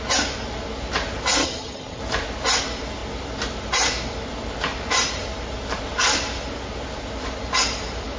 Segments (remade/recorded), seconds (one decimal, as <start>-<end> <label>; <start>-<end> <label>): 0.0-1.4 recorded; 1.4-2.0 remade; 2.0-8.2 recorded